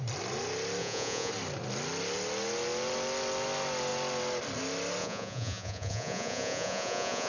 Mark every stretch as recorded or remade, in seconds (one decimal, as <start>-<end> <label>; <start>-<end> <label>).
0.0-0.8 recorded; 0.8-1.3 remade; 1.3-5.0 recorded; 5.0-7.3 remade